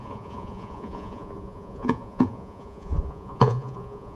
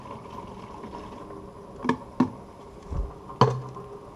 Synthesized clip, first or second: first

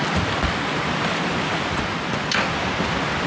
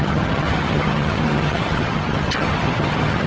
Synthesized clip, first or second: second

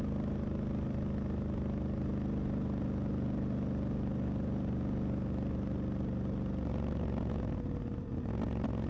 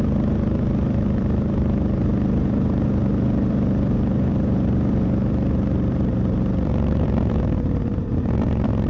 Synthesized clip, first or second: second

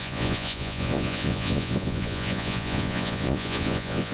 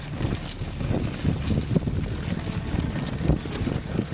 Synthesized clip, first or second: first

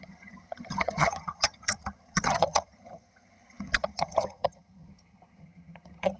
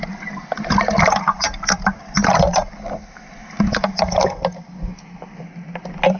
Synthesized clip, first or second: first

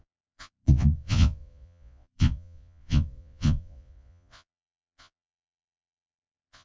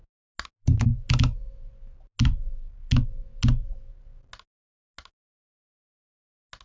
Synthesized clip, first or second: first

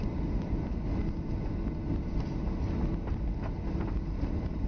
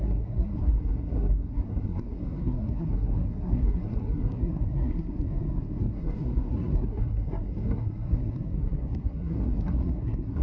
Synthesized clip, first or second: second